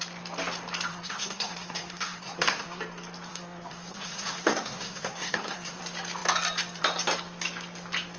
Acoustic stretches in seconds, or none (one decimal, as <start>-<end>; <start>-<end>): 0.0-0.9; 2.8-3.3; 5.8-8.2